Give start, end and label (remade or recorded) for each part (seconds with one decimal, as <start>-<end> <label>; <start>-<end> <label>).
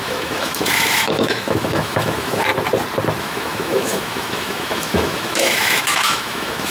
0.0-2.5 remade; 2.5-3.2 recorded; 3.2-6.7 remade